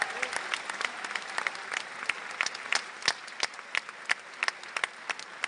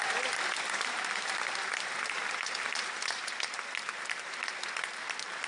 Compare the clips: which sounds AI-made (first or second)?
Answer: second